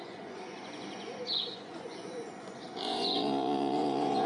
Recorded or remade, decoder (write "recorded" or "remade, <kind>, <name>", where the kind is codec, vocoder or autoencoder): remade, vocoder, Vocos